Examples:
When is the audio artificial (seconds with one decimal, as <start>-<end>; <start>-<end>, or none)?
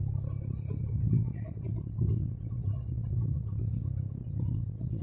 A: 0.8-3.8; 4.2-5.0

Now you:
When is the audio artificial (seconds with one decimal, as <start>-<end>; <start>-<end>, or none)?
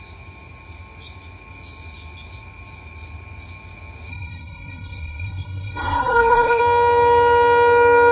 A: 4.1-6.6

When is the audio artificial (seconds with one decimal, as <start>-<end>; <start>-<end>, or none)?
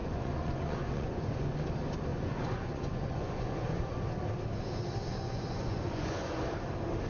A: 0.0-1.6; 2.1-3.8; 5.1-6.4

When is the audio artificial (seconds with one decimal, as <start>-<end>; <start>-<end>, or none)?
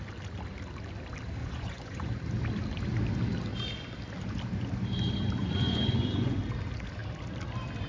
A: 1.4-2.1; 5.4-6.4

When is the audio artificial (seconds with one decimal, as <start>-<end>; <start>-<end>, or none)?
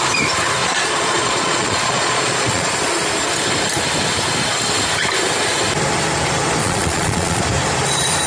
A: 0.6-2.7; 6.6-7.4